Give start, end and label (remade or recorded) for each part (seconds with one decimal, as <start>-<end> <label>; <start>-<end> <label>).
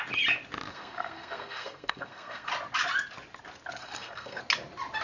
0.0-0.7 recorded; 0.7-2.5 remade; 2.5-3.8 recorded; 3.8-4.4 remade; 4.4-5.0 recorded